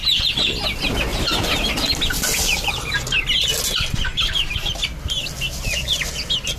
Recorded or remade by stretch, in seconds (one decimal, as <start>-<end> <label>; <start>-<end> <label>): 0.0-1.1 recorded; 1.1-1.7 remade; 1.7-2.1 recorded; 2.1-2.9 remade; 2.9-4.1 recorded; 4.1-4.8 remade; 4.8-6.6 recorded